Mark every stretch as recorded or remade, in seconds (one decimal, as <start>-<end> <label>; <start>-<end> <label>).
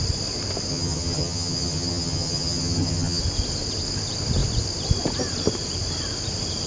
0.0-0.7 recorded; 0.7-3.2 remade; 3.2-6.7 recorded